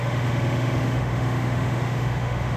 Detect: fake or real fake